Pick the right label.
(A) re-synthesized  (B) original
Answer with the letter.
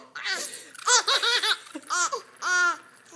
B